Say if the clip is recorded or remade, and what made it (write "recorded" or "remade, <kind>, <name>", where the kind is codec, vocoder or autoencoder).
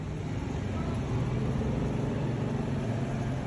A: recorded